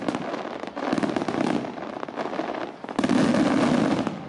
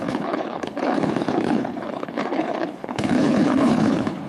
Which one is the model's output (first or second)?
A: second